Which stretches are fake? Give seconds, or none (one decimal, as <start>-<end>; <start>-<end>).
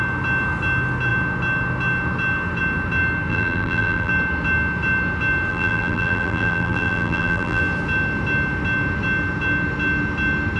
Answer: 3.3-4.1; 5.5-7.6